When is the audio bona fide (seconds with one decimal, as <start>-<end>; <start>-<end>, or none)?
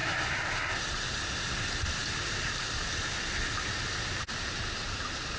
0.0-5.4